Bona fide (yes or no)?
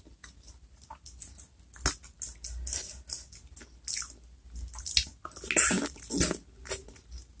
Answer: yes